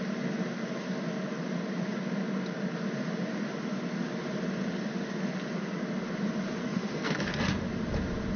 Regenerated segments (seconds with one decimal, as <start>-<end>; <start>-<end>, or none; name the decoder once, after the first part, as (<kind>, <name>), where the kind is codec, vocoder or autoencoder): 6.6-7.4 (codec, SNAC)